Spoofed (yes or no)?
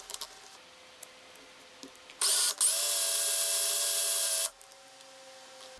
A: no